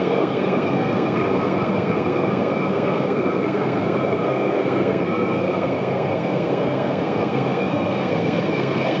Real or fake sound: fake